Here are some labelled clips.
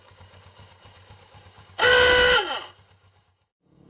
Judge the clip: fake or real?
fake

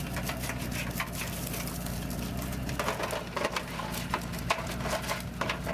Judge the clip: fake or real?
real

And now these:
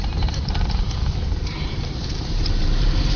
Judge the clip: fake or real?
fake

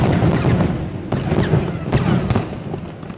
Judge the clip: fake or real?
real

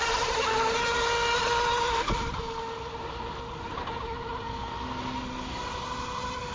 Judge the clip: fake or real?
real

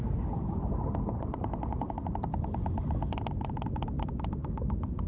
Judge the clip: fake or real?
real